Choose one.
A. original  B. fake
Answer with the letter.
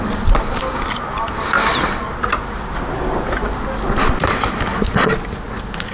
A